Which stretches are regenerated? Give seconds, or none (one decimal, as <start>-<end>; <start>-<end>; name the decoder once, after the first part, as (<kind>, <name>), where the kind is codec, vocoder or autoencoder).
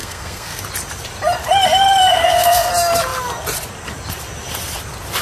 0.0-0.6 (codec, SNAC); 2.1-2.7